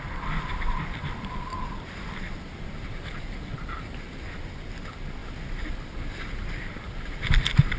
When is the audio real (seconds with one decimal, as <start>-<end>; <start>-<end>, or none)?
0.0-7.8